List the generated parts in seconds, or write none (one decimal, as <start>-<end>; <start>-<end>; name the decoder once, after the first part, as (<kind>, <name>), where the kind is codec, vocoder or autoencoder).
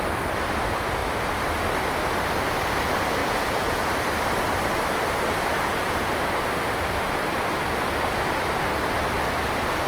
3.2-3.9 (vocoder, Vocos); 5.5-6.1